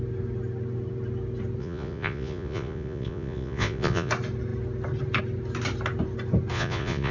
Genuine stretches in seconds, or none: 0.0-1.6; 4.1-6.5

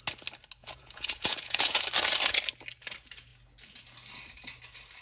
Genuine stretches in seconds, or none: 0.0-0.6; 1.8-5.0